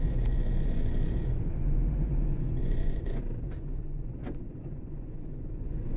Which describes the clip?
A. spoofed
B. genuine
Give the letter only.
A